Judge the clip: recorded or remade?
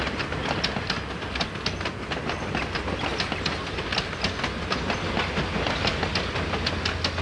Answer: recorded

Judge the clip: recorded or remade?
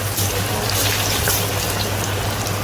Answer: recorded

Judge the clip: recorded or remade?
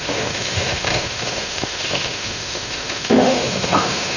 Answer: remade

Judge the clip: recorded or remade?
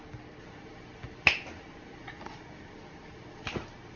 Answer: recorded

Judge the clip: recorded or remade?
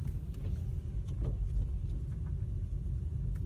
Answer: recorded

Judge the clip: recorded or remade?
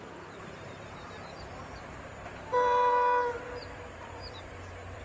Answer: remade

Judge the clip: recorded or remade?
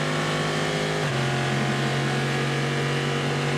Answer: recorded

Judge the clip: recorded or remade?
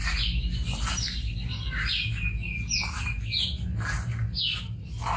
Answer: recorded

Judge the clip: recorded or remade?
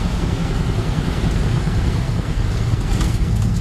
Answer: remade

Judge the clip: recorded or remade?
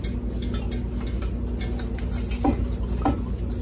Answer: recorded